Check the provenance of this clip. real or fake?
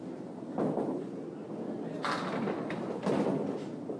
real